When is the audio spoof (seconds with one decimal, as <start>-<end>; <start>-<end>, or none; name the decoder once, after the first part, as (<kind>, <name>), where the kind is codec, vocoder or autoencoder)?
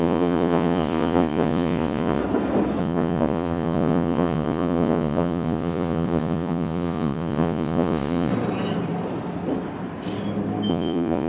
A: 0.0-2.2 (vocoder, Vocos); 2.8-8.3; 10.7-11.3